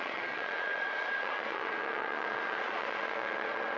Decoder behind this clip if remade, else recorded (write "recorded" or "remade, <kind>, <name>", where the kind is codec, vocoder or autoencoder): remade, vocoder, Vocos